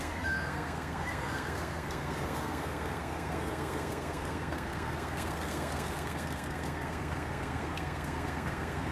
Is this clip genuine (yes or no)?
no